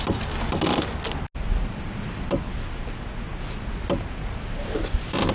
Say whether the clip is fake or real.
real